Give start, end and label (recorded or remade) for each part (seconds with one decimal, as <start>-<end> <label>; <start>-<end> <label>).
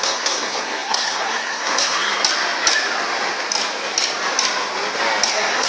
0.0-2.2 remade; 2.2-5.3 recorded; 5.3-5.7 remade